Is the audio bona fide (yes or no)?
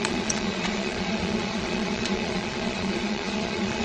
no